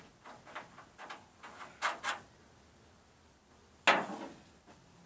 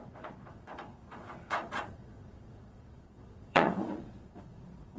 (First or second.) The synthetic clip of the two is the second